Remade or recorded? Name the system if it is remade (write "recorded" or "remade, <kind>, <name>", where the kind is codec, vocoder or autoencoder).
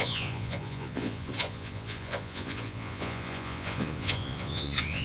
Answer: remade, vocoder, Vocos